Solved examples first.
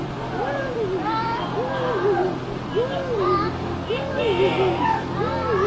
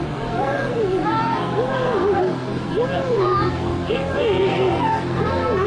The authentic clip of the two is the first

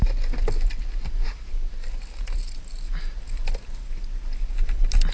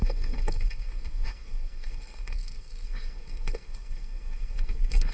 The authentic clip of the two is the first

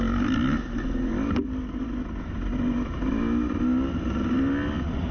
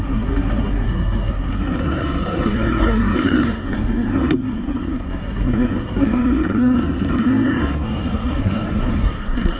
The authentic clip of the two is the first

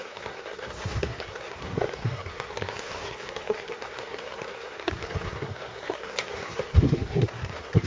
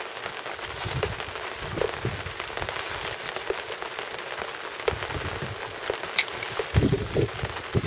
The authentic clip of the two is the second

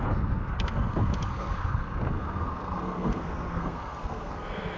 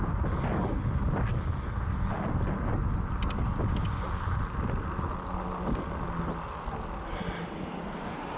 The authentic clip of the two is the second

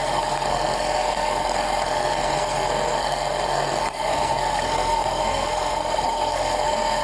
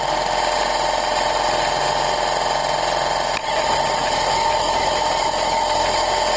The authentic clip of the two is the second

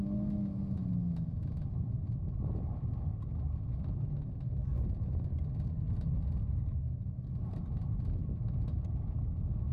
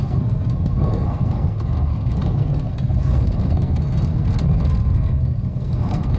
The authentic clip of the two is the first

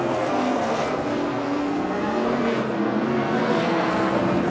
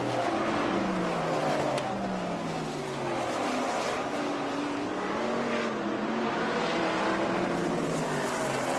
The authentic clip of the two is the second